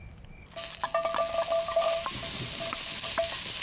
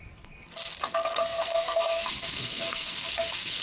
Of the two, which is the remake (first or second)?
second